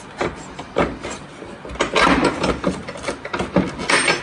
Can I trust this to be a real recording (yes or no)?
yes